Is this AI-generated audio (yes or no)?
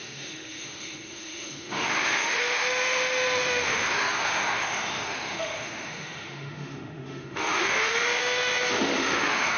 yes